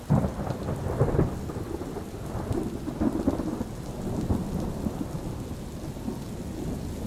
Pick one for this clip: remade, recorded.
recorded